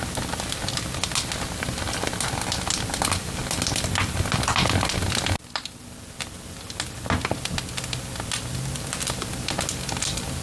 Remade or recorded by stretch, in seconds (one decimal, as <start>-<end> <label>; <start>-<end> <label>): 0.0-10.4 recorded